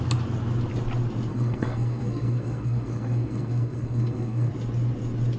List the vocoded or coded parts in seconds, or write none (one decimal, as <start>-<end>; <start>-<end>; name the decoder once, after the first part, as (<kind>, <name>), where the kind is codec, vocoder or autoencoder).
1.3-4.5 (codec, SNAC)